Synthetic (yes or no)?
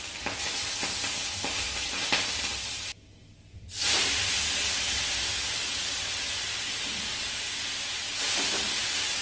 no